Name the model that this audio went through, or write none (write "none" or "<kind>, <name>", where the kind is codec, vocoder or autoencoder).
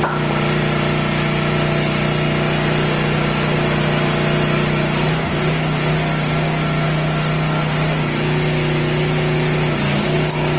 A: none